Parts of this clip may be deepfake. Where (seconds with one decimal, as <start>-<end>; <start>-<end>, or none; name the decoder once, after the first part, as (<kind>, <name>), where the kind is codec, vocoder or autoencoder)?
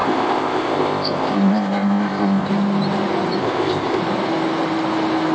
0.0-2.5 (codec, ZipCodec); 3.4-4.0